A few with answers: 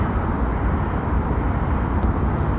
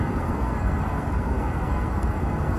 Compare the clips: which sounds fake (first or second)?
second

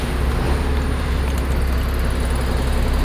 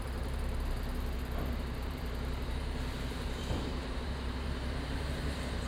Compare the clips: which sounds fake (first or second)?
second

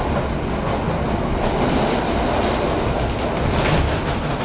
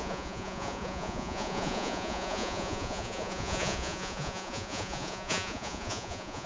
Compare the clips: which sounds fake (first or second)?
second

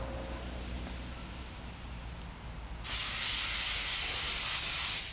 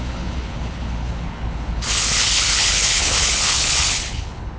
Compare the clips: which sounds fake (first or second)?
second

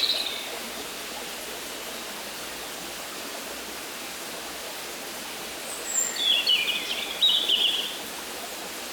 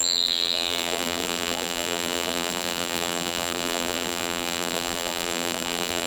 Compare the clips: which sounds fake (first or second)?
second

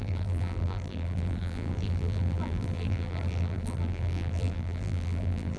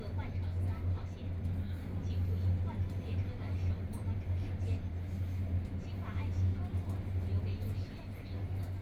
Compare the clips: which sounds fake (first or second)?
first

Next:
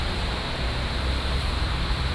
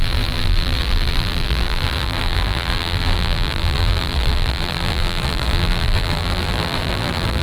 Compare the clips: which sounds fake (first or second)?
second